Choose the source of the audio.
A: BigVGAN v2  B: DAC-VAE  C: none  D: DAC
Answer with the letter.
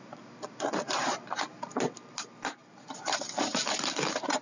A